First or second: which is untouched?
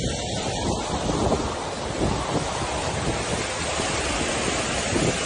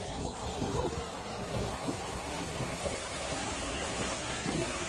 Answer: first